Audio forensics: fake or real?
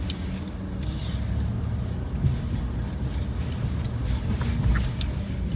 real